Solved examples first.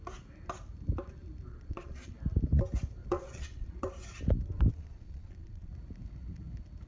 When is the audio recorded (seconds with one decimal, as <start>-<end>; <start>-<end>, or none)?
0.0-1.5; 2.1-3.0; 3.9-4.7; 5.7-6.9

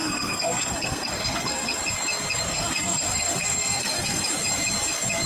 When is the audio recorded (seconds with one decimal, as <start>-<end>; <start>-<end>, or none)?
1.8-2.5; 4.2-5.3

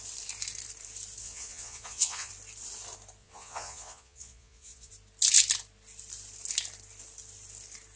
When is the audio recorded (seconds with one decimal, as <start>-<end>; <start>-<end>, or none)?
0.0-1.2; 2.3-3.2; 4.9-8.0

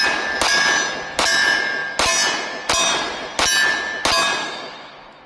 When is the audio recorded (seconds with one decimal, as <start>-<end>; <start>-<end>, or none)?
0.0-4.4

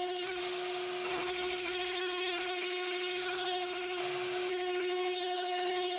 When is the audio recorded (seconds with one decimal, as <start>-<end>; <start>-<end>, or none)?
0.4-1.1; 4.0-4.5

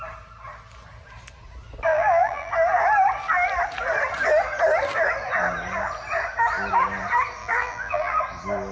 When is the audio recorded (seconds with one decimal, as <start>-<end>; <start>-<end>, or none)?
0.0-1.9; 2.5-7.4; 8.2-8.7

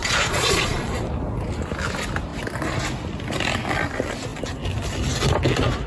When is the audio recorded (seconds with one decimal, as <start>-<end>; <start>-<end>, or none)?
0.9-5.9